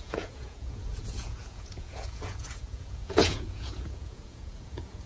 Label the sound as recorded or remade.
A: remade